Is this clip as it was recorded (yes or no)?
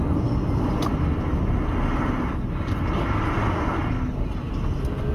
yes